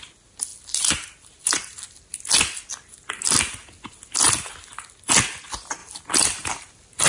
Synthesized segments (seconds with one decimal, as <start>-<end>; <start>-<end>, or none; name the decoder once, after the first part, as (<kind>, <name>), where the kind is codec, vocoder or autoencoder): 0.5-2.0 (vocoder, BigVGAN v2); 3.6-4.2; 5.8-7.1